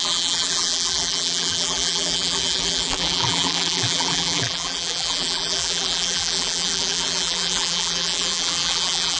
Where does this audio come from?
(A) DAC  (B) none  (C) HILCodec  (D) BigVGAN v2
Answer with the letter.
D